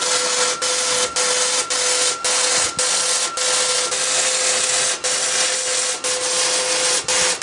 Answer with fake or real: real